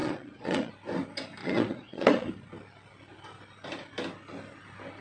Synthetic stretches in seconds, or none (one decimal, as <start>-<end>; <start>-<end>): 0.0-0.7; 1.4-2.3